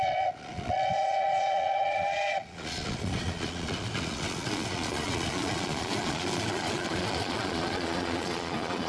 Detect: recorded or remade remade